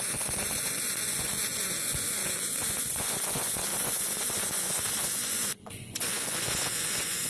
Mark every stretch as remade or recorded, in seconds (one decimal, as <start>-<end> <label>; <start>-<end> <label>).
0.0-7.3 remade